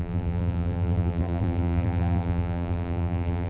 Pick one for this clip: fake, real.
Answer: fake